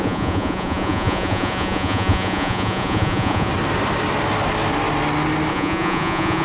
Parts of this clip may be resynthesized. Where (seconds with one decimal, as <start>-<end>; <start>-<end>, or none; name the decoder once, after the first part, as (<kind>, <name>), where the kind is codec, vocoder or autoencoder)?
0.0-3.5 (vocoder, Vocos); 5.5-6.4